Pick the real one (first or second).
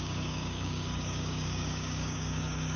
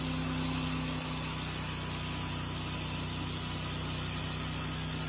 second